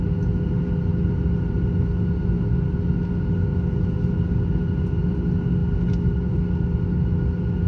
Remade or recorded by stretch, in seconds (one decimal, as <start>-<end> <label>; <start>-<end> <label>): 0.0-7.7 recorded